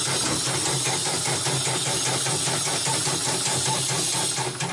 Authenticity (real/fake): real